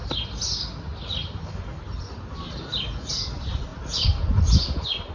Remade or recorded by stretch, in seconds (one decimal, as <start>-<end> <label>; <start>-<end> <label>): 0.0-5.1 recorded